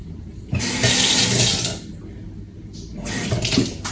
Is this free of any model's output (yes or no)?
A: yes